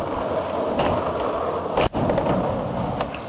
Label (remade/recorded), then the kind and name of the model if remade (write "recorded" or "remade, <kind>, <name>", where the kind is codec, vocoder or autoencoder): recorded